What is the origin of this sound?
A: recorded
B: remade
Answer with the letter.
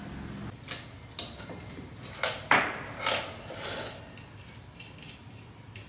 A